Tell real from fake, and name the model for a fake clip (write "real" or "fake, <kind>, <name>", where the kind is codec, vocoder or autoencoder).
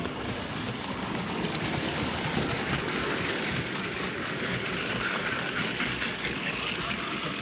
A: fake, codec, DAC